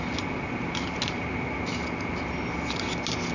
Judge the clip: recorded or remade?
recorded